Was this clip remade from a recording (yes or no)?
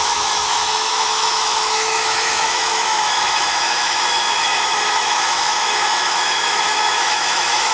yes